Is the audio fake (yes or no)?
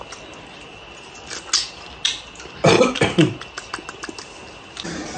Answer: no